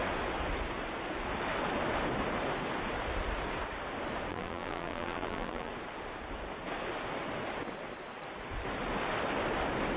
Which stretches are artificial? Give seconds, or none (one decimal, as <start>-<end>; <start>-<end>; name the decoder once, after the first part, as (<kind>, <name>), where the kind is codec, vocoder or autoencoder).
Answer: 4.3-5.7 (vocoder, BigVGAN v2)